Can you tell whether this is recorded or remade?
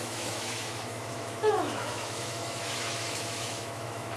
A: remade